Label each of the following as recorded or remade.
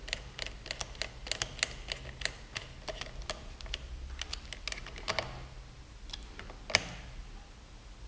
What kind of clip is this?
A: recorded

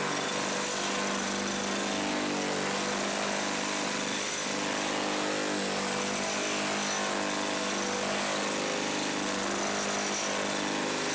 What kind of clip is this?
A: recorded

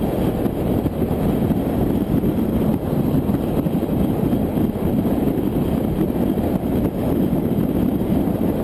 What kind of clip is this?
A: remade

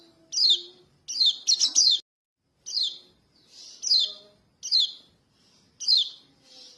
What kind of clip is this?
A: recorded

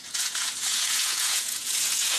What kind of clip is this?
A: remade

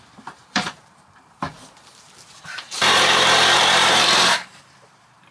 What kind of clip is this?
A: remade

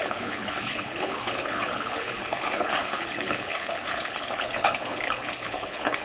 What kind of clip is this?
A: remade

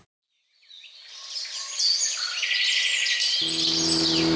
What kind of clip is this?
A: recorded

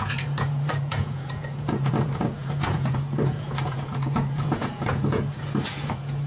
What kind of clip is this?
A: remade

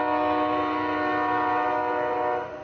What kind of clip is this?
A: recorded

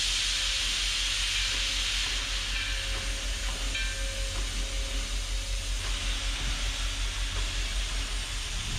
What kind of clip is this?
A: recorded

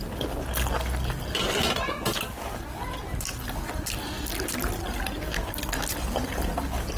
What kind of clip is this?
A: recorded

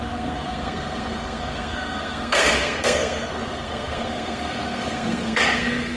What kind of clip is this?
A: remade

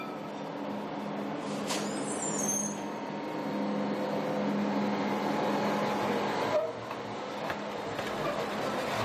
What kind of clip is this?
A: recorded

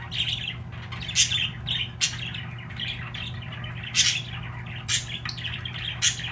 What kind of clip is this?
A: recorded